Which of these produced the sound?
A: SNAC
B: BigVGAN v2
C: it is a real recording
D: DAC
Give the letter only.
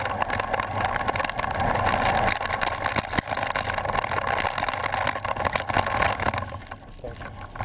C